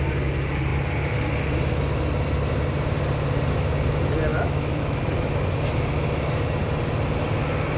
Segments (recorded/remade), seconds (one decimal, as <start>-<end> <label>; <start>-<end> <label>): 0.0-4.3 recorded; 4.3-5.0 remade; 5.0-7.8 recorded